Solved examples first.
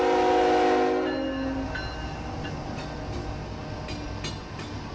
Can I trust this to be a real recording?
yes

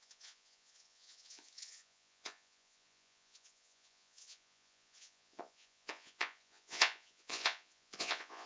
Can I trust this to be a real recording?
no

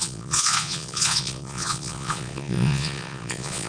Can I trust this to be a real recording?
no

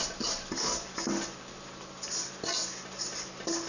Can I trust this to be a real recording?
yes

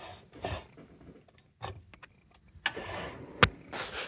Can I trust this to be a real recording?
yes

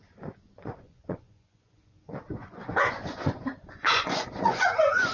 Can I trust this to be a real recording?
no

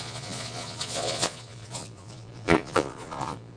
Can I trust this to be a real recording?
no